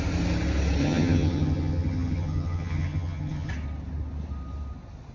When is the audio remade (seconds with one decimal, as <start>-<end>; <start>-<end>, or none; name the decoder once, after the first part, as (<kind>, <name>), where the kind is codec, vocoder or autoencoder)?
0.8-3.5 (vocoder, HiFi-GAN)